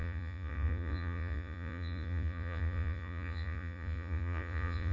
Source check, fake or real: fake